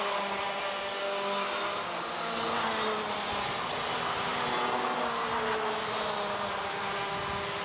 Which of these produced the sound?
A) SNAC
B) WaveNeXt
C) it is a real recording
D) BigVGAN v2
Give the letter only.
C